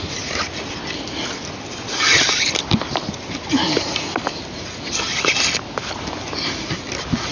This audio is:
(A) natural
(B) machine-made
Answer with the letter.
A